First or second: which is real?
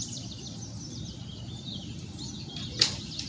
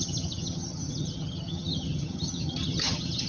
first